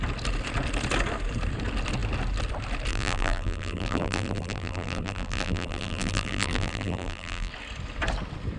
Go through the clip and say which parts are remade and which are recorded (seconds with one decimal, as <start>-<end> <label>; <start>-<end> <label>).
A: 0.0-2.9 recorded; 2.9-7.5 remade; 7.5-8.6 recorded